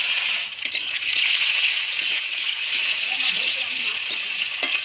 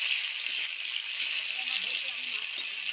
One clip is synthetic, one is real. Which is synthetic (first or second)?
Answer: first